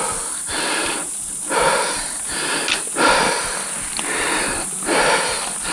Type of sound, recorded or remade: recorded